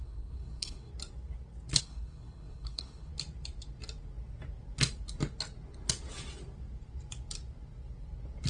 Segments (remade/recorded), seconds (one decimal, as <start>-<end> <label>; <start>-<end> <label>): 0.0-0.9 remade; 0.9-1.8 recorded; 1.8-3.1 remade; 3.1-8.5 recorded